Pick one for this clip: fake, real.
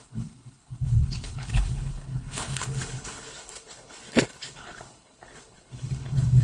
fake